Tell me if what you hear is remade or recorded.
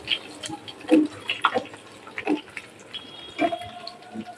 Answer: recorded